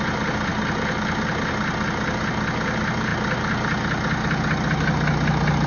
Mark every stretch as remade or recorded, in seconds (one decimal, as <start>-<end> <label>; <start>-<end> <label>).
0.0-5.7 recorded